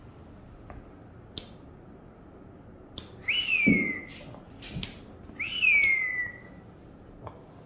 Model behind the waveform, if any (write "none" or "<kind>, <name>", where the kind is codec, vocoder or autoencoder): none